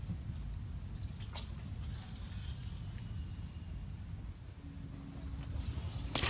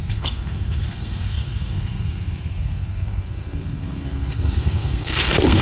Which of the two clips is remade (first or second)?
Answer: second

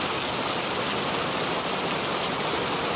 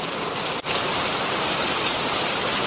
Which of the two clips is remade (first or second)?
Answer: second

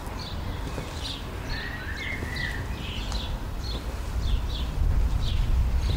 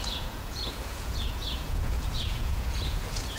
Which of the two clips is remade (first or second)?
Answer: second